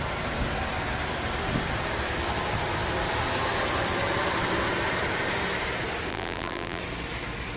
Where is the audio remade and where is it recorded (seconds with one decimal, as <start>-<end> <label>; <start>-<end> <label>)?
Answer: 0.0-6.1 recorded; 6.1-6.8 remade; 6.8-7.6 recorded